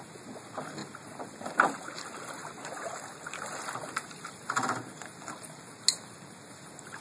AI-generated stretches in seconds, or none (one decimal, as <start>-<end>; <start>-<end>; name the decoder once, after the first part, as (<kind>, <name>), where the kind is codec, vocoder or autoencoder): none